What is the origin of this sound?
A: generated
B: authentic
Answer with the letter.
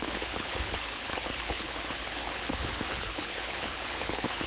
A